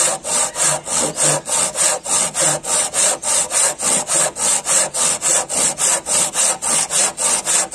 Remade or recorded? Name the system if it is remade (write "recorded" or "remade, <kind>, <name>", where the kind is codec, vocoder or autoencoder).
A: recorded